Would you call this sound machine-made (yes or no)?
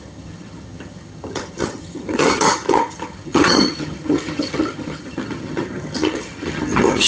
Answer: yes